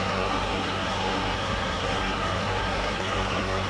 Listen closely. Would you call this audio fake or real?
fake